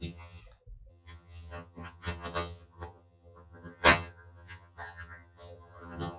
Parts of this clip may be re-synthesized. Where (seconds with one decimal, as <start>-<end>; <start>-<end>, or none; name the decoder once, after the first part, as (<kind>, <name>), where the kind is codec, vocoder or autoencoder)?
0.0-0.4 (vocoder, HiFi-GAN); 0.9-6.2

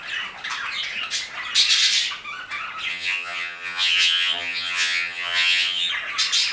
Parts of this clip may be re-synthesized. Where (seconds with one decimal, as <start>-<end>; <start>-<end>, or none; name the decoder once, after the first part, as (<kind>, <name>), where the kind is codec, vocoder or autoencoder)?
2.9-5.9 (vocoder, HiFi-GAN)